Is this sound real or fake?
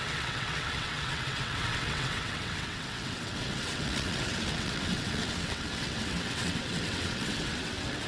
fake